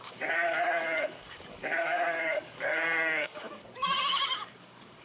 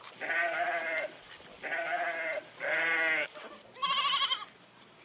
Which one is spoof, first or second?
first